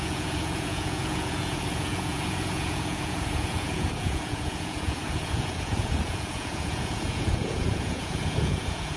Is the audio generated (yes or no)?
yes